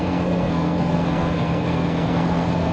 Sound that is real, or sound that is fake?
fake